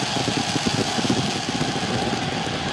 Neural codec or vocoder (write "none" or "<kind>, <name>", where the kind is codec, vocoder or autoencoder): none